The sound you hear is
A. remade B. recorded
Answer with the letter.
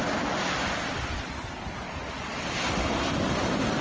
B